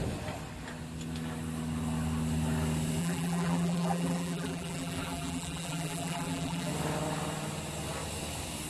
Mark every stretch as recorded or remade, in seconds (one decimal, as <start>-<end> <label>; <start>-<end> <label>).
0.0-3.0 recorded; 3.0-6.7 remade; 6.7-8.7 recorded